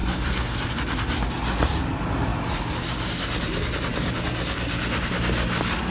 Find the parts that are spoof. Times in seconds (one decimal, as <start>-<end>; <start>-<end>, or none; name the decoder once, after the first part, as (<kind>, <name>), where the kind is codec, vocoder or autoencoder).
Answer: 0.0-0.7 (vocoder, BigVGAN v2)